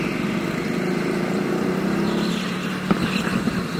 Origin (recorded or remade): recorded